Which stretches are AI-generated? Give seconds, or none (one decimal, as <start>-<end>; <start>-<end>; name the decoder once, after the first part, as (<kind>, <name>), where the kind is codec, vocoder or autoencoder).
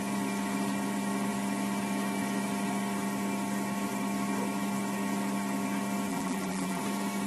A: 6.1-6.8 (vocoder, BigVGAN v2)